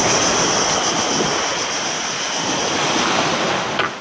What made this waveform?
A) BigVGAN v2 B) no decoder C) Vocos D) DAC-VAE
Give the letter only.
B